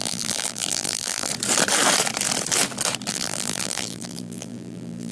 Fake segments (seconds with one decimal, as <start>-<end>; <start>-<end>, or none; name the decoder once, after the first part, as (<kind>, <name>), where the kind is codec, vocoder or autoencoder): 0.0-1.3 (vocoder, BigVGAN v2); 3.1-5.1